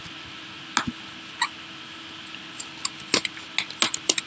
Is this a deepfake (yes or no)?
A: no